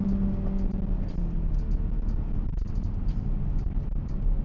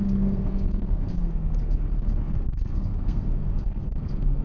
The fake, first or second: second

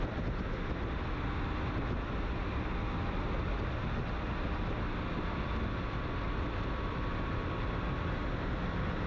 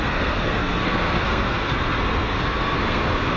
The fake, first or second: second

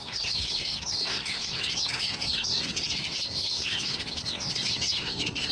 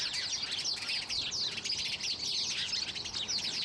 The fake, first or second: first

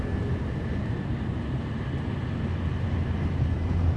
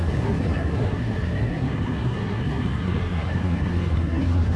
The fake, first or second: second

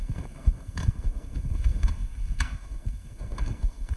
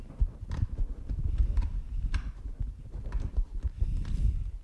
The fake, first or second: first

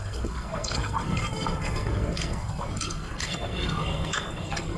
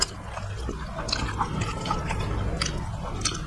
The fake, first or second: first